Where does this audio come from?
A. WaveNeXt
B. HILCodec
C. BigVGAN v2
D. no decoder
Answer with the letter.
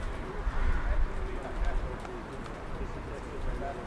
D